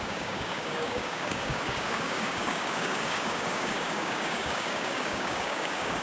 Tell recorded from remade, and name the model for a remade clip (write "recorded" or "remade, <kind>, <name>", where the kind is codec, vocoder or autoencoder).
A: remade, codec, DAC